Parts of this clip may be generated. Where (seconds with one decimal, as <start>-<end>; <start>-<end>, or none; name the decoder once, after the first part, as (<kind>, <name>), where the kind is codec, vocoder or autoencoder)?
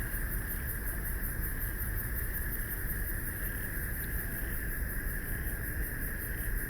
1.3-2.4 (vocoder, Vocos)